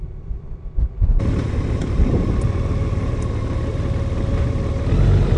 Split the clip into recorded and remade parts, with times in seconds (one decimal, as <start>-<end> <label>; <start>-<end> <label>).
0.0-1.8 recorded; 1.8-4.7 remade; 4.7-5.4 recorded